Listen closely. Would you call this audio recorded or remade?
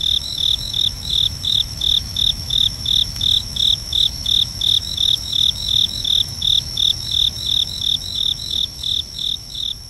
remade